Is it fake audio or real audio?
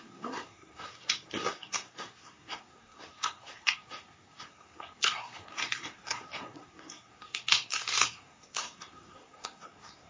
fake